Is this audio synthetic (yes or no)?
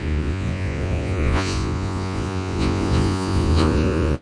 yes